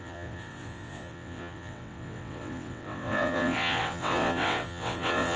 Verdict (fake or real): fake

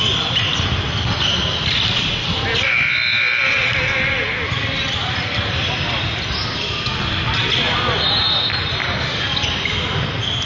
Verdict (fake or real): real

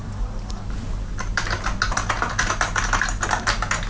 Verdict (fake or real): real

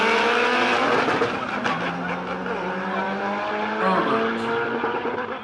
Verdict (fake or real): real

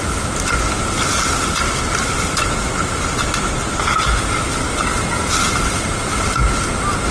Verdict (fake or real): real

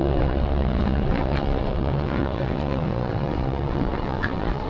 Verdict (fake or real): fake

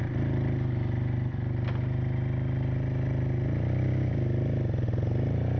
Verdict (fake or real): real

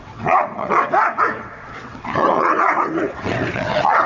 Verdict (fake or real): fake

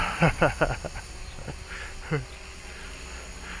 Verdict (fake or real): real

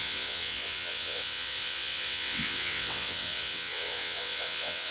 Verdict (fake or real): fake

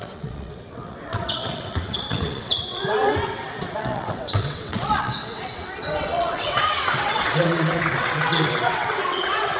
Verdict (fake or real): fake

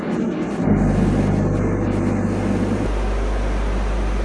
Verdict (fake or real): real